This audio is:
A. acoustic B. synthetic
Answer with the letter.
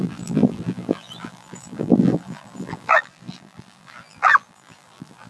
B